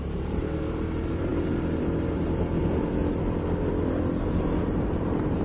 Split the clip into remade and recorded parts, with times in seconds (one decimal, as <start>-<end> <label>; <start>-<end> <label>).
0.0-3.0 remade; 3.0-4.2 recorded; 4.2-5.4 remade